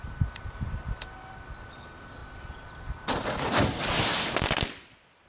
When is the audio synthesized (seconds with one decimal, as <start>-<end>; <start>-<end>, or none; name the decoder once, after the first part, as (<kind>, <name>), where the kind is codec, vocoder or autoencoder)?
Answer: none